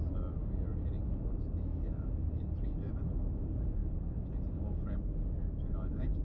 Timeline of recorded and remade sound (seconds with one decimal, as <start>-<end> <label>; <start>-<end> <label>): 0.0-6.2 recorded